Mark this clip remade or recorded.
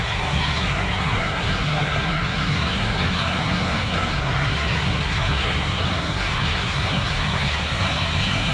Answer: remade